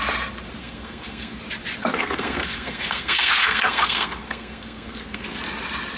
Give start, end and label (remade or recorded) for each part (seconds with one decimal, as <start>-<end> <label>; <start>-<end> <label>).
0.0-0.6 recorded; 0.6-1.4 remade; 1.4-1.8 recorded; 1.8-5.4 remade; 5.4-6.0 recorded